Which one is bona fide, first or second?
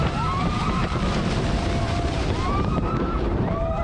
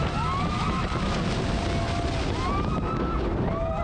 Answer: second